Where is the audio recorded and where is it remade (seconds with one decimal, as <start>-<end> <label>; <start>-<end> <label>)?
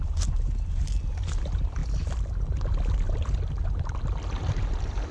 0.0-5.1 recorded